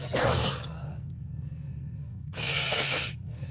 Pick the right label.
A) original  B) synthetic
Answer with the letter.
B